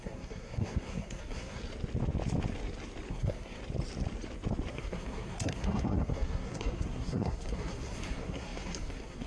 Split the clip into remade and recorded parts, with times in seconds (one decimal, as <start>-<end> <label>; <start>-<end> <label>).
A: 0.0-1.6 remade; 1.6-3.1 recorded; 3.1-3.6 remade; 3.6-4.7 recorded; 4.7-9.3 remade